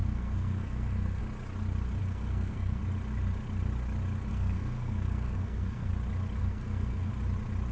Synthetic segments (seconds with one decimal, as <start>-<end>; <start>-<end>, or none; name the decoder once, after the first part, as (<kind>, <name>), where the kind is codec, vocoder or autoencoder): 0.0-1.2 (codec, SNAC); 2.0-2.8; 4.3-5.9; 6.4-7.1